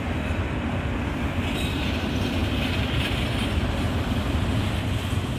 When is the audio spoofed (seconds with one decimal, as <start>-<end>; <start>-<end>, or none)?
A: none